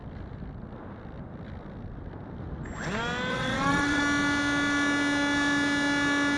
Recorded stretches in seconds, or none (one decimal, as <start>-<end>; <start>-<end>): 0.0-3.3; 4.0-6.4